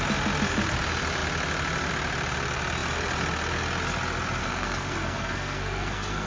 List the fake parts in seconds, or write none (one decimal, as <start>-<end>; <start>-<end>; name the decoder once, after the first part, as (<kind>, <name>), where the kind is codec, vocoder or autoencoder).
4.4-6.3 (codec, SNAC)